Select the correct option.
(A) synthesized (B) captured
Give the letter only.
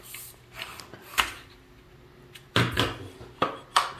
B